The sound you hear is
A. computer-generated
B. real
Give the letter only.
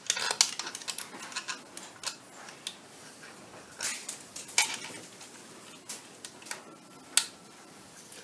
B